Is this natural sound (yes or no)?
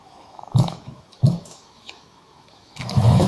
no